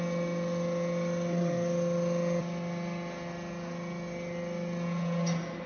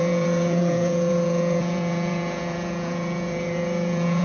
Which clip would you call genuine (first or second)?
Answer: first